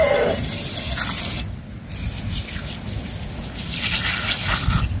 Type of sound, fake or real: real